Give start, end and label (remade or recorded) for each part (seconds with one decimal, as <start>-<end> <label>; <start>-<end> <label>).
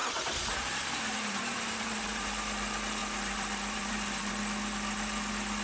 0.0-2.3 remade; 2.3-3.0 recorded; 3.0-4.3 remade; 4.3-5.6 recorded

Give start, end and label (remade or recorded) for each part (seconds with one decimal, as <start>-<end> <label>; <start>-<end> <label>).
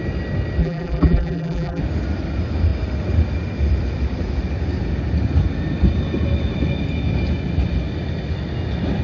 0.0-0.6 recorded; 0.6-1.8 remade; 1.8-9.0 recorded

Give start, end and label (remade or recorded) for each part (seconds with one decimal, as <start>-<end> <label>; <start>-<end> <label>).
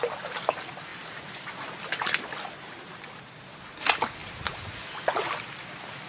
0.0-6.1 recorded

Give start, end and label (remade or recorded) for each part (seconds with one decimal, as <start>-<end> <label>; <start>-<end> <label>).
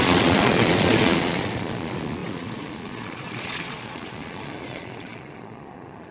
0.0-6.1 remade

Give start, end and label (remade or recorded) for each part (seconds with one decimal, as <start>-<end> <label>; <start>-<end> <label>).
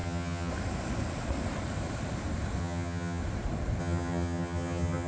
0.0-0.5 remade; 0.5-2.6 recorded; 2.6-3.2 remade; 3.2-3.8 recorded; 3.8-5.1 remade